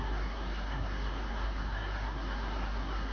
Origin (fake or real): fake